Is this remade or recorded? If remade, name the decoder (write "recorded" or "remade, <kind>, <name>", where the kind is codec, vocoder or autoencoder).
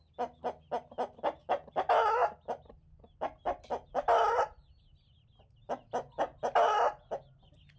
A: recorded